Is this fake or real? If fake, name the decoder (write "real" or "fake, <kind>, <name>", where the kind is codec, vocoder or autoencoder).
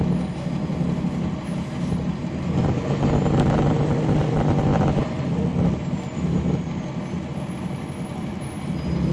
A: real